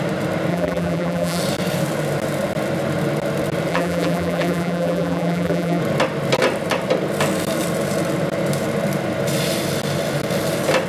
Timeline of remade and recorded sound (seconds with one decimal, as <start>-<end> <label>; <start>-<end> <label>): 0.0-0.5 recorded; 0.5-1.4 remade; 1.4-3.7 recorded; 3.7-5.8 remade; 5.8-10.9 recorded